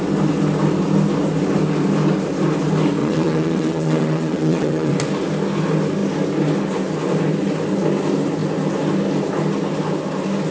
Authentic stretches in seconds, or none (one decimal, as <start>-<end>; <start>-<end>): 0.0-3.0; 4.9-10.5